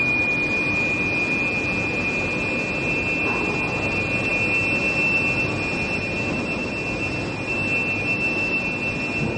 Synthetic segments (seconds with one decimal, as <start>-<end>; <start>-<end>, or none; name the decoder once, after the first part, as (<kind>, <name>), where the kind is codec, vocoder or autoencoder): none